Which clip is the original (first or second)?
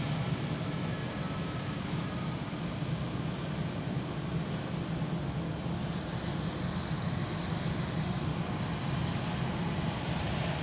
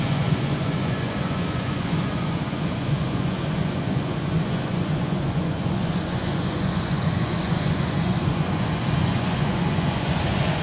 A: first